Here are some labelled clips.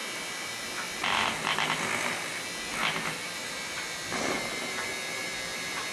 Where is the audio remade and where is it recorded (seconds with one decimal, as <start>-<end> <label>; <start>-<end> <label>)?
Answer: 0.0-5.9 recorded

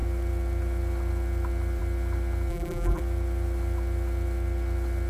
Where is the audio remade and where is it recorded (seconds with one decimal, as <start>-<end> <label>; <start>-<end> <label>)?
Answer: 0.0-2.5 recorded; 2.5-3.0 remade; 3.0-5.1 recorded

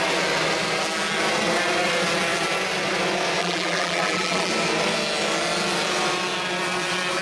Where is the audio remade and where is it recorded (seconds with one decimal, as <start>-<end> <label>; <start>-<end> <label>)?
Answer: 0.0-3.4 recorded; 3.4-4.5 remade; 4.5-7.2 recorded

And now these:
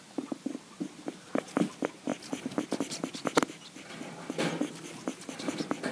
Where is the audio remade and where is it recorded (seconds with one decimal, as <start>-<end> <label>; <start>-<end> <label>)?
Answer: 0.0-5.9 recorded